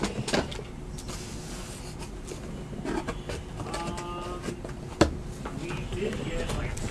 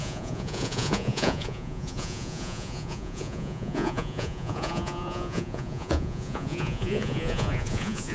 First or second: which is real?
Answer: first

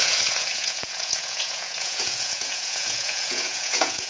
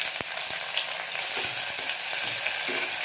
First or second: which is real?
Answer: second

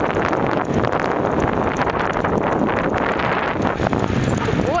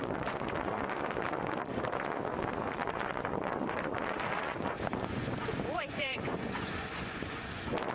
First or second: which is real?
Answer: first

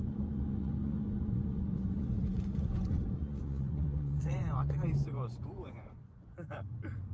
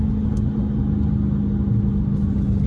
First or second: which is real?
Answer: second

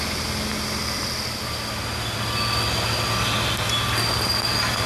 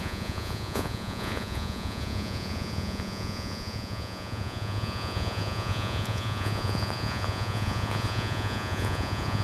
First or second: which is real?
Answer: first